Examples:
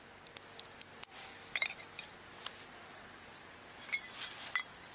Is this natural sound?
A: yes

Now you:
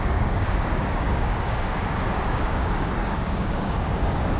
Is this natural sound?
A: no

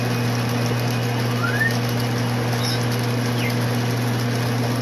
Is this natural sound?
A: yes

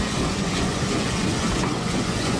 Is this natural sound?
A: no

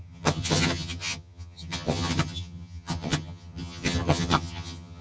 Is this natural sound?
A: no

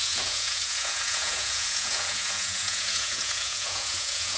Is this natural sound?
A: no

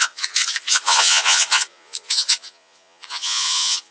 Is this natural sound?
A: no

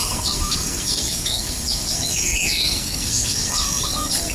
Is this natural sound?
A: no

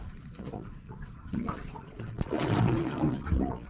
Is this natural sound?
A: no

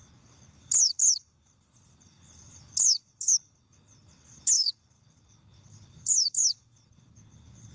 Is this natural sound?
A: no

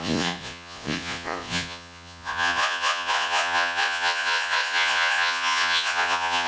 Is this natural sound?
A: no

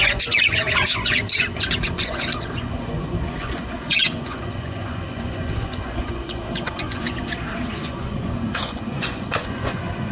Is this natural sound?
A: no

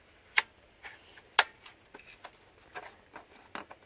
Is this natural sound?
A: yes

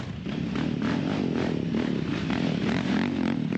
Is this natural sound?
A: yes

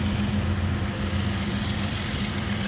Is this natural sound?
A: yes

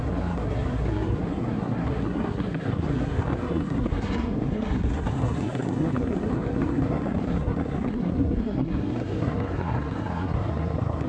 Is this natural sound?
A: no